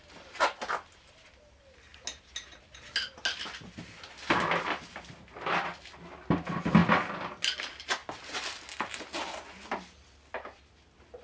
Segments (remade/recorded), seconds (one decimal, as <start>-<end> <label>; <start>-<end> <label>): 0.0-11.2 recorded